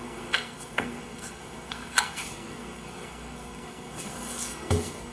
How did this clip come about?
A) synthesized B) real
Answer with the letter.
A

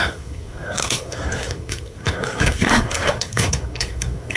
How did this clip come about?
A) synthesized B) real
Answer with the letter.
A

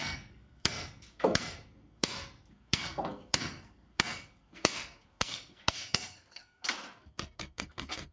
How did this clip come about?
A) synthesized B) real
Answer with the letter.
A